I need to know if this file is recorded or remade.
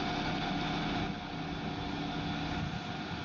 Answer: recorded